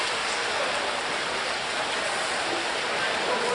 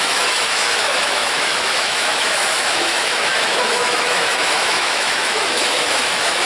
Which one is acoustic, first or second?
first